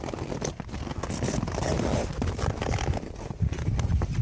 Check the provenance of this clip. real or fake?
real